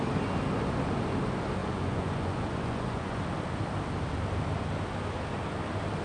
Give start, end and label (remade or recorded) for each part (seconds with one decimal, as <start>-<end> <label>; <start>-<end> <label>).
0.0-1.6 recorded; 1.6-3.2 remade; 3.2-6.0 recorded